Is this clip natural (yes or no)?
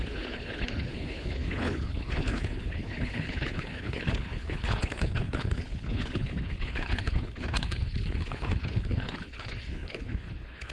no